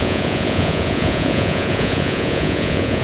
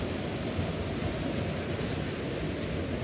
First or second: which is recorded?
second